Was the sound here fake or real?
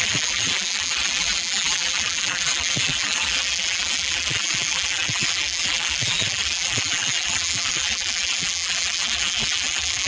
fake